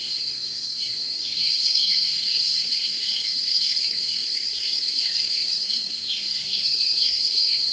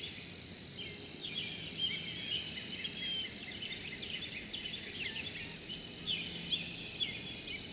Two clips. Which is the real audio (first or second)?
second